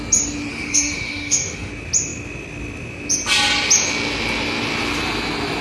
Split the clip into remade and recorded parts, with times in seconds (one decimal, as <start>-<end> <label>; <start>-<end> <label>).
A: 0.0-0.5 recorded; 0.5-1.7 remade; 1.7-5.6 recorded